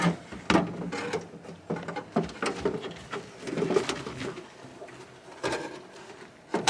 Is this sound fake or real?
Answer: real